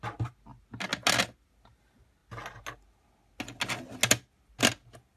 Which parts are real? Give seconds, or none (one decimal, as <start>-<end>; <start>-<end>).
0.0-5.2